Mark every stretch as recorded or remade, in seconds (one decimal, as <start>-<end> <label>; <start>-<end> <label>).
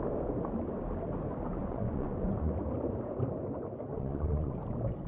0.0-1.6 recorded; 1.6-2.5 remade; 2.5-3.9 recorded; 3.9-4.5 remade; 4.5-5.1 recorded